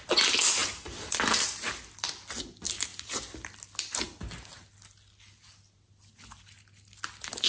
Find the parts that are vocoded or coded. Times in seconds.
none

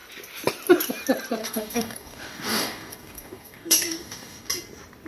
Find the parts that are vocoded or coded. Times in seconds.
1.4-4.5 (codec, DAC)